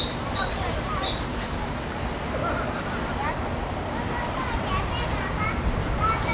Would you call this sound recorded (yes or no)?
yes